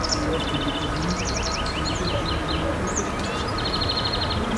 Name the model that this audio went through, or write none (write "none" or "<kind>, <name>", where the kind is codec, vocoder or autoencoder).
none